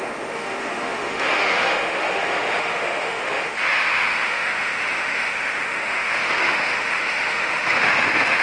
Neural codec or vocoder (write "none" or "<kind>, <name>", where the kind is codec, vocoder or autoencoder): autoencoder, DAC-VAE